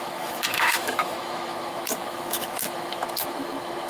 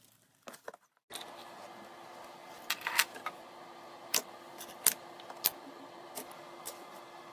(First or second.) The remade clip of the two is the first